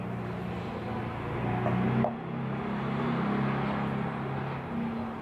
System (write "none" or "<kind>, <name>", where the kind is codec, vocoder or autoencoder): none